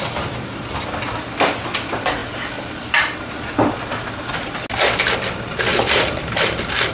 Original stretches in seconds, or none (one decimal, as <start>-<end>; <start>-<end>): 0.0-5.7